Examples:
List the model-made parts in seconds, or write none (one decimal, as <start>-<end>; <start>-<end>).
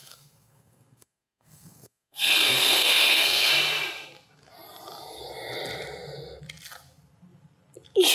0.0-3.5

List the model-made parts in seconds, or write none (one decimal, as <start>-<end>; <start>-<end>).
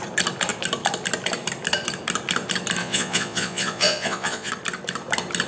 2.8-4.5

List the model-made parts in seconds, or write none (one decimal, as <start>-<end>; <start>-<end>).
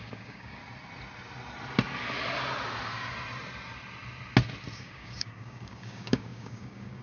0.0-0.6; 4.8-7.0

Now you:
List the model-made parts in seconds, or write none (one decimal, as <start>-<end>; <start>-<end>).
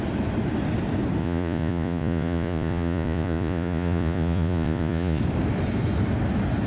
1.2-5.2